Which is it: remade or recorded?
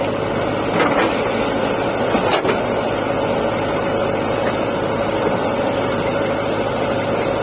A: recorded